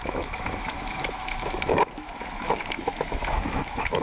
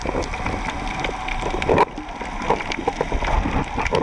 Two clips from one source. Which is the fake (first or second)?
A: first